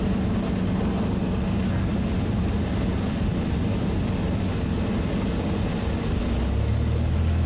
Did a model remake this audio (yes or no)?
no